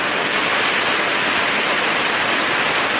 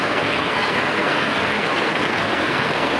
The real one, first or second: first